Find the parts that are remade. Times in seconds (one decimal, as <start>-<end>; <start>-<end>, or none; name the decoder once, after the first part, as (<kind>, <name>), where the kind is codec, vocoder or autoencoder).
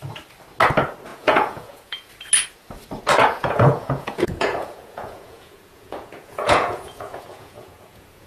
1.1-2.1 (vocoder, Vocos); 3.2-8.3